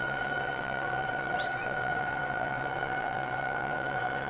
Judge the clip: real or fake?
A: fake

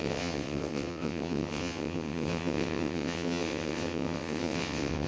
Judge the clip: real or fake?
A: fake